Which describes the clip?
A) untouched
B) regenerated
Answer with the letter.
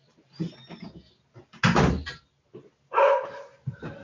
A